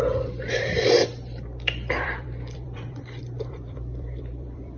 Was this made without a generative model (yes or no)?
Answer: no